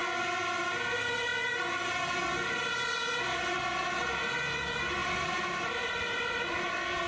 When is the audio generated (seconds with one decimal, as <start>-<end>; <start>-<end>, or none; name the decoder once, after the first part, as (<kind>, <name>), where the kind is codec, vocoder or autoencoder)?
5.0-7.1 (vocoder, BigVGAN v2)

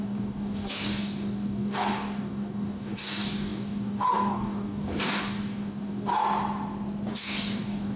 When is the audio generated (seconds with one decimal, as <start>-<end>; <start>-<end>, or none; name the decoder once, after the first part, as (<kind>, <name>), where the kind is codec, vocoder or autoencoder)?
0.0-6.1 (codec, DAC); 7.1-8.0

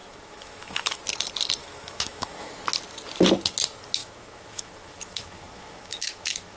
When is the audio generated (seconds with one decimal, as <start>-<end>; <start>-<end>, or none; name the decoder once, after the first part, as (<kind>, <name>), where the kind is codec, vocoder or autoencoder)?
0.0-1.0 (autoencoder, DAC-VAE); 1.6-2.5; 4.0-6.6

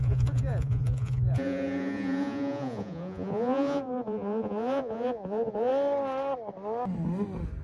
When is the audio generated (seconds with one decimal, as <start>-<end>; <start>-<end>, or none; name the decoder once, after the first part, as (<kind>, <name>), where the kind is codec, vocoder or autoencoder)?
0.0-5.7 (vocoder, Vocos)